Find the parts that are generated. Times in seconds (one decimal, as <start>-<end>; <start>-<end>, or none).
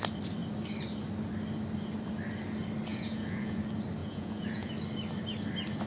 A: 2.9-3.6; 4.0-4.7